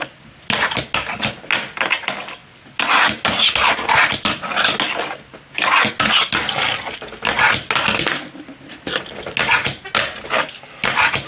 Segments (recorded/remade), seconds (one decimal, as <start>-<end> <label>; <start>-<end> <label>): 0.0-11.3 recorded